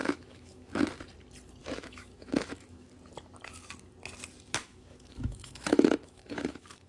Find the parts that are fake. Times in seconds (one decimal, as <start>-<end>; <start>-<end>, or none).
0.0-0.8; 1.6-2.9; 4.6-6.9